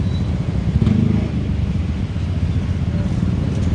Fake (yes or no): no